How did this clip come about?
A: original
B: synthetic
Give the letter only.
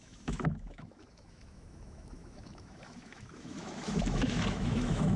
B